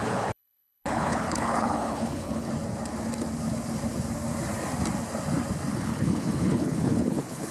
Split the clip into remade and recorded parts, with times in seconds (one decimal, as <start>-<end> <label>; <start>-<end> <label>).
0.0-2.5 remade; 2.5-5.7 recorded; 5.7-7.5 remade

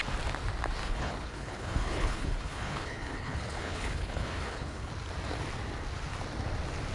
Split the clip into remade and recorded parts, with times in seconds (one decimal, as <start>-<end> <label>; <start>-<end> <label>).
0.0-0.8 recorded; 0.8-4.9 remade; 4.9-6.9 recorded

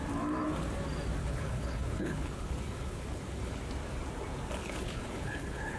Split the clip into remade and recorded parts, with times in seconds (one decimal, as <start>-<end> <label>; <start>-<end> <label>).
0.0-1.2 recorded; 1.2-3.6 remade; 3.6-4.6 recorded; 4.6-5.8 remade